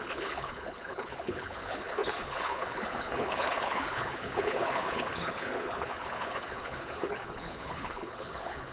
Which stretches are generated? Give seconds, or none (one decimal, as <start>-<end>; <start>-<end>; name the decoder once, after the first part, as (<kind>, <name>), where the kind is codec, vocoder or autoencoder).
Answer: 0.0-8.7 (codec, HILCodec)